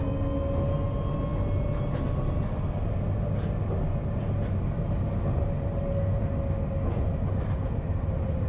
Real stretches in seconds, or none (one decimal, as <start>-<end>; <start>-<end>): 0.0-8.5